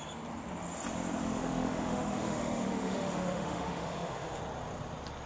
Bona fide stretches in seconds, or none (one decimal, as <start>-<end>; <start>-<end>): 0.0-1.2; 4.4-5.3